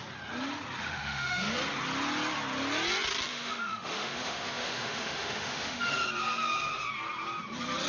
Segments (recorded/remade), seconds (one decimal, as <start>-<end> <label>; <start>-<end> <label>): 0.0-0.8 recorded; 0.8-1.5 remade; 1.5-3.3 recorded; 3.3-5.9 remade; 5.9-7.9 recorded